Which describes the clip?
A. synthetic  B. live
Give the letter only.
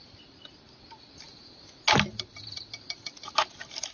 B